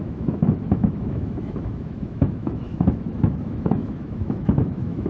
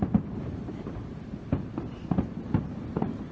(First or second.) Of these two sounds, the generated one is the first